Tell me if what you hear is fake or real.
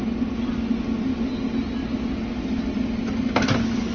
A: real